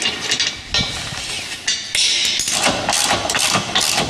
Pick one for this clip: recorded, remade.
recorded